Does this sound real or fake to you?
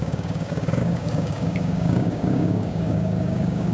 fake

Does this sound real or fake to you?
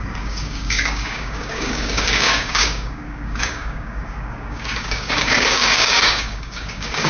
fake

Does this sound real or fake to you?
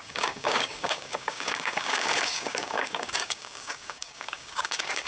fake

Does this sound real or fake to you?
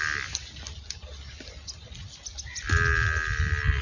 real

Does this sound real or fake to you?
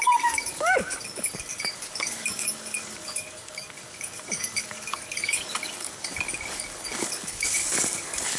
fake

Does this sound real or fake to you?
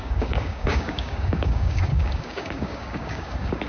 fake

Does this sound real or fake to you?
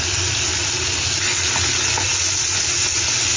real